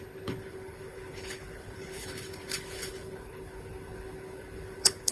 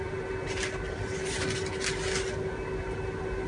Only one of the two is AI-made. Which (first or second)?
first